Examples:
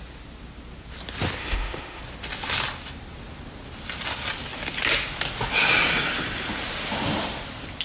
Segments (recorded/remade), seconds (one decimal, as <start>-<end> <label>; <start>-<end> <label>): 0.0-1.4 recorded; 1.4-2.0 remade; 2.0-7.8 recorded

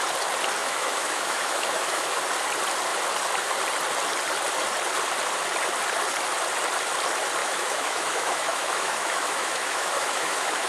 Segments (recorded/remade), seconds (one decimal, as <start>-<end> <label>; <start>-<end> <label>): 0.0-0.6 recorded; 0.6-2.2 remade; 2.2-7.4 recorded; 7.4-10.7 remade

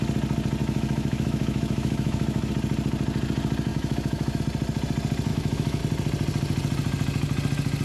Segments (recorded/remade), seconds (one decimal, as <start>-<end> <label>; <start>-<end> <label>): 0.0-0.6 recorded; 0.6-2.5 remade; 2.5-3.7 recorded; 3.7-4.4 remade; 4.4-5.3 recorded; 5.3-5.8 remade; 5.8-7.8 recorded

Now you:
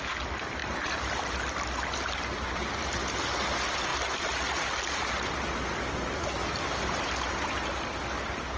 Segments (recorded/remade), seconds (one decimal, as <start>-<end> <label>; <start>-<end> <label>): 0.0-8.6 recorded

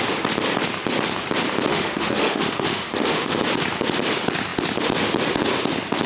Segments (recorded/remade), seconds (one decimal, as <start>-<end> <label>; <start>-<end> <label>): 0.0-1.7 recorded; 1.7-3.4 remade; 3.4-6.1 recorded

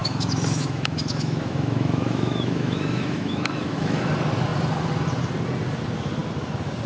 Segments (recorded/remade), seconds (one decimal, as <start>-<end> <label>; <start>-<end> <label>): 0.0-4.1 remade; 4.1-6.9 recorded

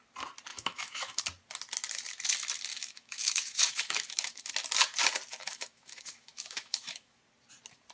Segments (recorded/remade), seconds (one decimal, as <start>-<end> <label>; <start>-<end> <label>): 0.0-0.5 recorded; 0.5-1.2 remade; 1.2-2.7 recorded; 2.7-4.5 remade; 4.5-5.3 recorded; 5.3-7.2 remade; 7.2-7.9 recorded

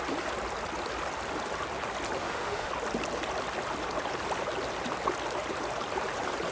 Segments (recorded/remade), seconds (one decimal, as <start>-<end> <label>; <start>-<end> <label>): 0.0-2.2 recorded; 2.2-2.7 remade; 2.7-6.5 recorded